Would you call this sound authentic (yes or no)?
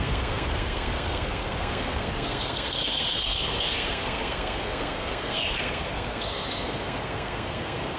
no